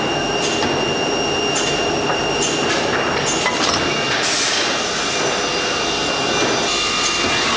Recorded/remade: recorded